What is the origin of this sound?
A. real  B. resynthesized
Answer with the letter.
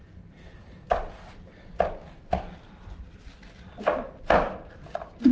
A